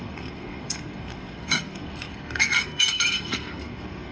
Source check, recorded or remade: remade